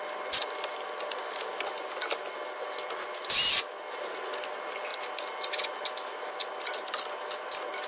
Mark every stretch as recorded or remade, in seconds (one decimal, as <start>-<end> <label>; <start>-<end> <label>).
0.0-7.9 recorded